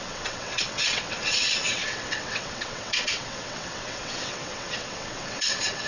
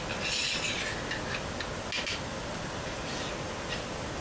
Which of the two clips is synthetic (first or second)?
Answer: first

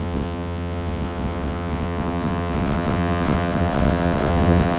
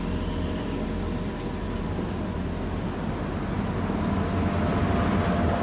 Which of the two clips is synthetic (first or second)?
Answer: first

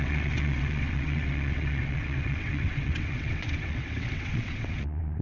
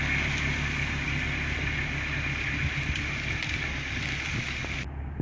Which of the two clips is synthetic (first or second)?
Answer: first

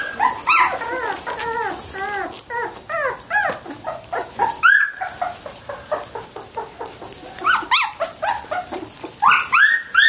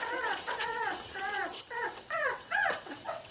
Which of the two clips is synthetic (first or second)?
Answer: second